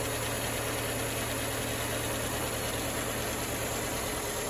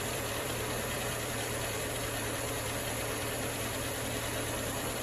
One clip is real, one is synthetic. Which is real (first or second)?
first